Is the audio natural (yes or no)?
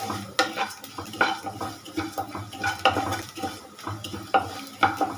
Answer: yes